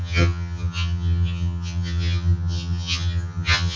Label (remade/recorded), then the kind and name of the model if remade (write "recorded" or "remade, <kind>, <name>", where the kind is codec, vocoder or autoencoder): remade, vocoder, HiFi-GAN